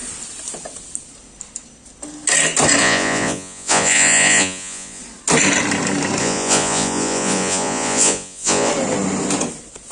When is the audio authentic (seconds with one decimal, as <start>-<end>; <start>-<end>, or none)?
0.0-2.8; 5.0-6.2; 8.7-9.9